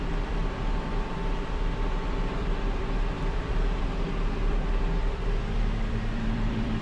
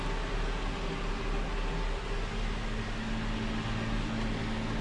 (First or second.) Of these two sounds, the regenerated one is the first